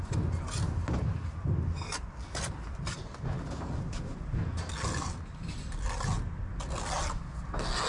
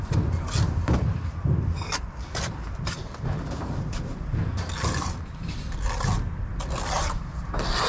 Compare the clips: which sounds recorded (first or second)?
first